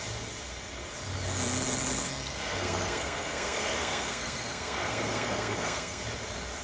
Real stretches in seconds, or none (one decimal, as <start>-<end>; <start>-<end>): 0.0-2.0; 6.0-6.6